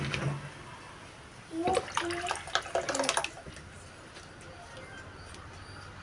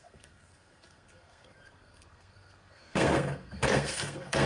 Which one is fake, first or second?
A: second